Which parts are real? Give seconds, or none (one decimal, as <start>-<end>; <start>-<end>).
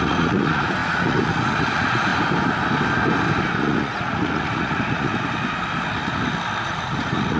2.1-3.6; 5.1-6.6